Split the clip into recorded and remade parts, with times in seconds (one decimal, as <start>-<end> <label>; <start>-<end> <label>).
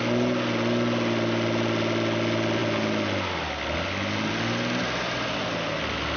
0.0-6.2 recorded